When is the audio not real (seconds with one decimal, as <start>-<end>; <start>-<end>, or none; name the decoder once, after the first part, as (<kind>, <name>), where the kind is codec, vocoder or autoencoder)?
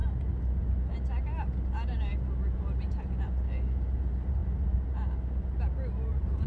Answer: none